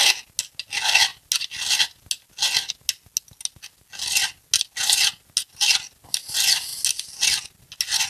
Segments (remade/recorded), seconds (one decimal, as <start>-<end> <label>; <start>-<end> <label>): 0.0-8.1 recorded